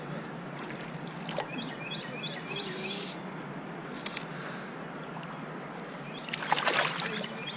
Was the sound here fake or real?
real